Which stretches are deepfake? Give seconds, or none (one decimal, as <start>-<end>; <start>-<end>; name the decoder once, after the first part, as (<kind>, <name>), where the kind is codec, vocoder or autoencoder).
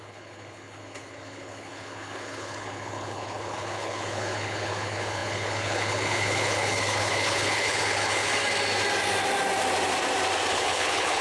0.0-8.3 (codec, HILCodec); 10.5-11.2